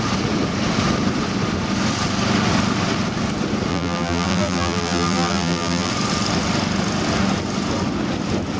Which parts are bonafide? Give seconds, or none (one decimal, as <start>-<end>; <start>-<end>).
0.0-3.7; 5.9-8.6